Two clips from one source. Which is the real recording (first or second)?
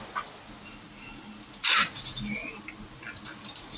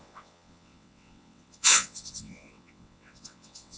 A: first